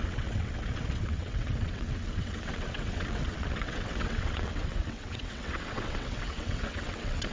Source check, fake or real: fake